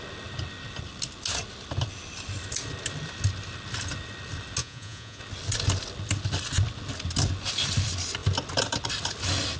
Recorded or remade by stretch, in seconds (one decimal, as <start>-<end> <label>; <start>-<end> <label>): 0.0-4.6 recorded; 4.6-5.2 remade; 5.2-9.6 recorded